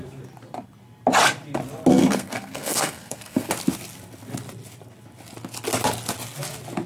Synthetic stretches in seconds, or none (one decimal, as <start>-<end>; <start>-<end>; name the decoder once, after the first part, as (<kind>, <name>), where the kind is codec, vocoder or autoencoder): 1.9-3.5 (codec, SNAC)